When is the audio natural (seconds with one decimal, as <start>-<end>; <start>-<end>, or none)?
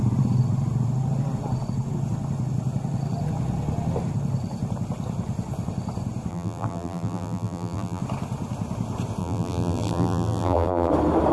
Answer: 0.0-6.3; 8.0-9.2; 10.9-11.3